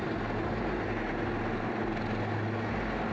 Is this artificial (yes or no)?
no